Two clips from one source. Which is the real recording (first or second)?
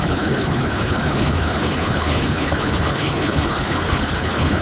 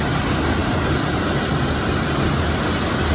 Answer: second